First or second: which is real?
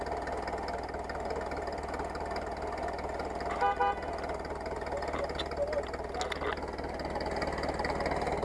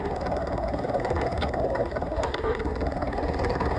first